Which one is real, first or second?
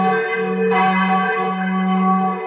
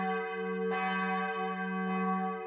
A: second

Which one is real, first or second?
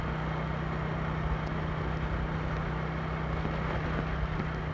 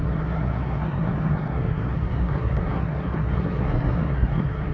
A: first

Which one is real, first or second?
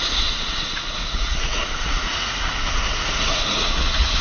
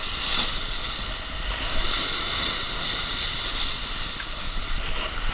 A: second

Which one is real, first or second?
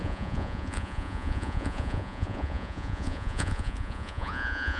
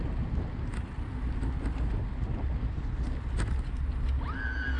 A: second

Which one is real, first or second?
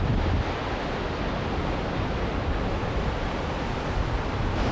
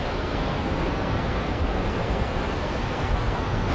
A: first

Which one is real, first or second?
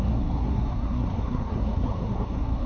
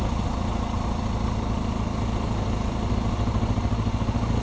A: second